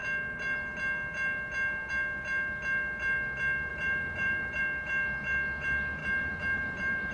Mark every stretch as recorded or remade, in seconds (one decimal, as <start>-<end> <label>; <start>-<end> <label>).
0.0-3.7 recorded; 3.7-4.6 remade; 4.6-6.0 recorded; 6.0-7.1 remade